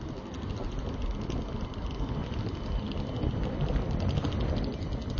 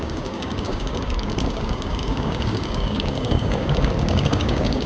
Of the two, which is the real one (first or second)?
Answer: first